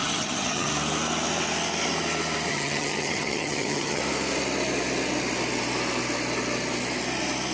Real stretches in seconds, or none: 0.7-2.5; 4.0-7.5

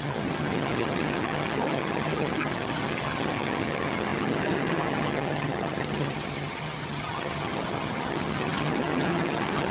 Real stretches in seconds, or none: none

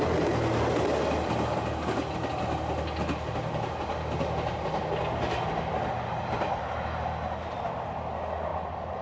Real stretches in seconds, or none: 0.0-9.0